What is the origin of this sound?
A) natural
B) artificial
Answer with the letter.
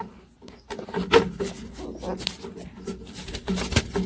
A